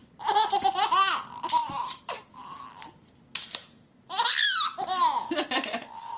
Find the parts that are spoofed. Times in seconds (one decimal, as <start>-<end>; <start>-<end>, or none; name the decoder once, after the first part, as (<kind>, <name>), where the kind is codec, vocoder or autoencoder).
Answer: 1.6-2.3 (vocoder, BigVGAN v2)